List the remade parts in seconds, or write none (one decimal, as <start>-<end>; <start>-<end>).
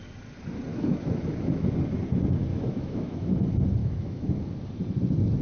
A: 0.7-1.7; 2.5-3.3; 3.8-4.4